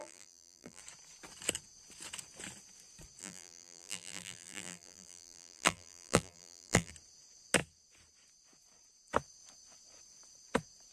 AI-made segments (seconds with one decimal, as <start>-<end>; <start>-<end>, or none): 0.0-0.8; 3.2-6.9